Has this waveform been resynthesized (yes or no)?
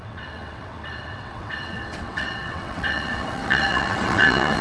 yes